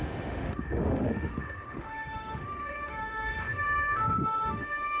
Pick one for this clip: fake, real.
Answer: fake